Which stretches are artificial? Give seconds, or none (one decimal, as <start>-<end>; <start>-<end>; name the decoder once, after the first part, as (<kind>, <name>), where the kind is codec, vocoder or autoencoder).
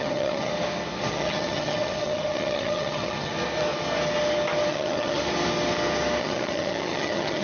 0.0-0.5 (vocoder, HiFi-GAN); 1.1-3.3; 4.7-5.2; 6.2-7.4